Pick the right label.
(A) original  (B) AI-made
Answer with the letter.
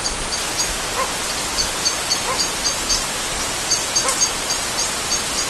A